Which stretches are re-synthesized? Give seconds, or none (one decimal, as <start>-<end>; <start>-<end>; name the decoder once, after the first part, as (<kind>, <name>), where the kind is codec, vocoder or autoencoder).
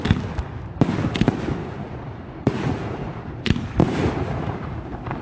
1.6-3.2 (vocoder, Vocos); 3.8-4.8